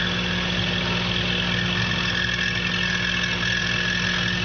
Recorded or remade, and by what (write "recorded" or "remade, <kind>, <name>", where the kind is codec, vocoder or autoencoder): recorded